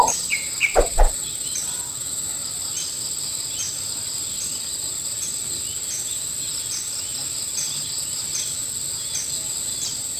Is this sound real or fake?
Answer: real